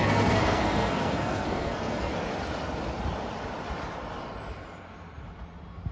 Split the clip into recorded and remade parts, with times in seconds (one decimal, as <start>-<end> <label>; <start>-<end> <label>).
0.0-2.1 remade; 2.1-5.9 recorded